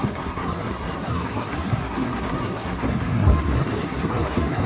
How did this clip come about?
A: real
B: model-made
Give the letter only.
B